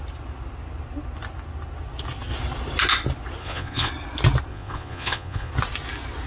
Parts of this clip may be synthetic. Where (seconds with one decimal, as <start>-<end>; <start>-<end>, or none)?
3.4-3.9; 4.5-5.5